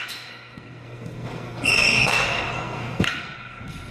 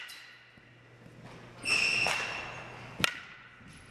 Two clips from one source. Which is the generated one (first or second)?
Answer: first